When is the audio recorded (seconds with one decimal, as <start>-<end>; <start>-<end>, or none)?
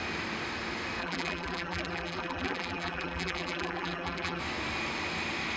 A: 0.0-1.0; 4.4-5.6